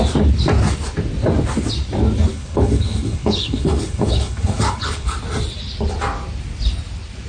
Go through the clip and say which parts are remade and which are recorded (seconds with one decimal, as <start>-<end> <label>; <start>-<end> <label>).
0.0-2.3 recorded; 2.3-5.1 remade; 5.1-7.3 recorded

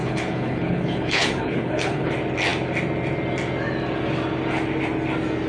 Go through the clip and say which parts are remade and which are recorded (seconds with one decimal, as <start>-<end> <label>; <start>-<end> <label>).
0.0-2.1 remade; 2.1-5.5 recorded

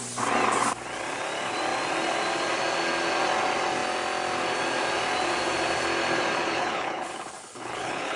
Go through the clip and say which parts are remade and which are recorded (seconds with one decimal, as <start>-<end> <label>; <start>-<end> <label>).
0.0-6.4 recorded; 6.4-8.2 remade

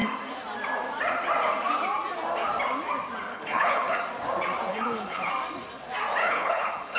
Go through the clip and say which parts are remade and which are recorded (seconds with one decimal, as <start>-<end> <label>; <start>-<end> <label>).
0.0-3.3 recorded; 3.3-4.0 remade; 4.0-4.7 recorded; 4.7-5.3 remade; 5.3-6.2 recorded; 6.2-7.0 remade

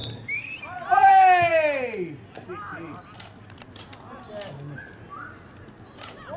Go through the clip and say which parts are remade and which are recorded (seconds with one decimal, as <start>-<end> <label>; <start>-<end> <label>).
0.0-6.4 recorded

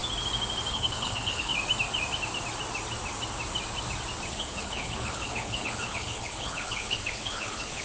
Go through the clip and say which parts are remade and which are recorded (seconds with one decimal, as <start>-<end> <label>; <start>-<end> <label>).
0.0-0.7 recorded; 0.7-1.5 remade; 1.5-4.3 recorded; 4.3-7.8 remade

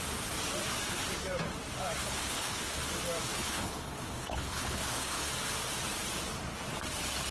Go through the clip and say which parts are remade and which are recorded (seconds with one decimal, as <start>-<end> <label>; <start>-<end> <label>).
0.0-2.0 recorded; 2.0-2.8 remade; 2.8-3.3 recorded; 3.3-5.3 remade; 5.3-7.3 recorded

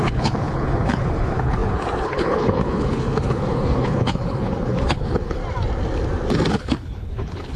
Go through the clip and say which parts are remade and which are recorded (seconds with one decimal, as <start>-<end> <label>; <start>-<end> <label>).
0.0-5.4 remade; 5.4-6.6 recorded; 6.6-7.6 remade